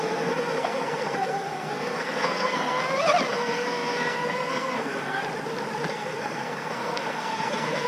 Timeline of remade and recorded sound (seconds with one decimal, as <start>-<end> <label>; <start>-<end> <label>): 0.0-2.8 remade; 2.8-3.3 recorded; 3.3-5.2 remade; 5.2-5.9 recorded; 5.9-7.9 remade